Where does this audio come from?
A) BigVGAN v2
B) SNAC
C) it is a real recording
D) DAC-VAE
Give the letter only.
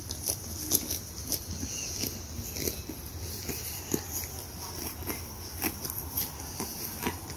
C